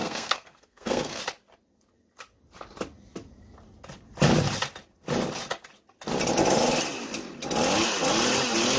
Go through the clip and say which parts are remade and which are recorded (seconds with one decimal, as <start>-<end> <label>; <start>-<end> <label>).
0.0-1.2 remade; 1.2-8.8 recorded